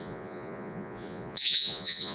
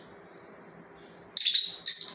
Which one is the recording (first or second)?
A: second